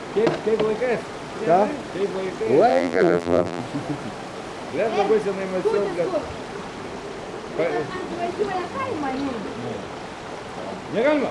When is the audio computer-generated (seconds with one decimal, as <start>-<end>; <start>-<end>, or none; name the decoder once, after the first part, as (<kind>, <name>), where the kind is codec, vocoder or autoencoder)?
2.7-3.6 (vocoder, BigVGAN v2)